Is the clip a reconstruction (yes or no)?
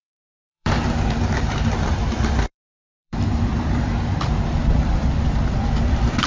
yes